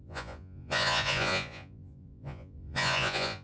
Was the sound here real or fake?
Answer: fake